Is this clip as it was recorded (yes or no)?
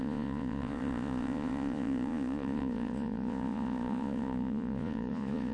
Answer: no